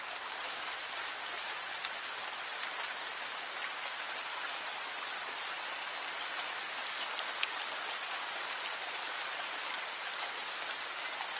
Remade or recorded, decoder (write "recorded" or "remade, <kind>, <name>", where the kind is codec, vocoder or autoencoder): recorded